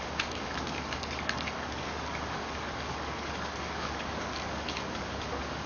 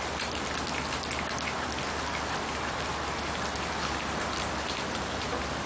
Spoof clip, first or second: first